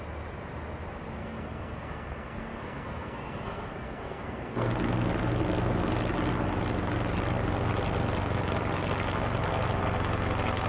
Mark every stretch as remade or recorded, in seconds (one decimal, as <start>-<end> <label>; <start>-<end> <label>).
0.0-1.2 recorded; 1.2-4.7 remade; 4.7-10.7 recorded

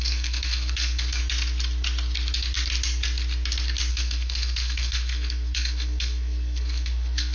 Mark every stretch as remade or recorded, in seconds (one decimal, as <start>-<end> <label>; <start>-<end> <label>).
0.0-1.2 remade; 1.2-3.9 recorded; 3.9-7.3 remade

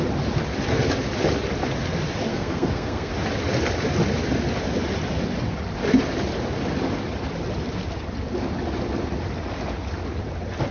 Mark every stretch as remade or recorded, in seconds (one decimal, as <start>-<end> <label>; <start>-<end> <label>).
0.0-2.3 recorded; 2.3-3.1 remade; 3.1-10.7 recorded

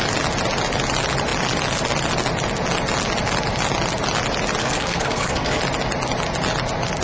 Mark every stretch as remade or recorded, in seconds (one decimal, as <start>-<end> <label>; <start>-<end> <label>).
0.0-4.6 recorded; 4.6-5.6 remade; 5.6-7.0 recorded

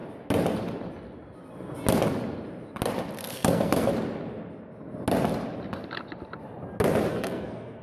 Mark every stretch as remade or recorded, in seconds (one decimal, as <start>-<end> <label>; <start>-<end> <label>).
0.0-3.2 recorded; 3.2-3.9 remade; 3.9-7.1 recorded; 7.1-7.8 remade

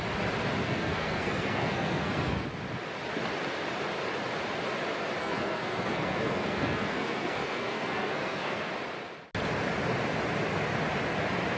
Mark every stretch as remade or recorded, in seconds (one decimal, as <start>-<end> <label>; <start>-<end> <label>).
0.0-0.6 recorded; 0.6-2.4 remade; 2.4-5.2 recorded; 5.2-8.7 remade; 8.7-11.6 recorded

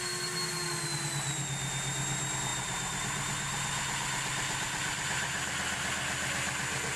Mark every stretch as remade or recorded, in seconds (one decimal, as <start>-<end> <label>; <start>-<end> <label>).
0.0-7.0 recorded

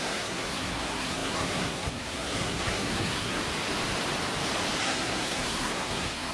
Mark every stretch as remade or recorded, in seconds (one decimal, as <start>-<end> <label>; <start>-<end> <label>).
0.0-3.4 remade; 3.4-4.8 recorded; 4.8-6.3 remade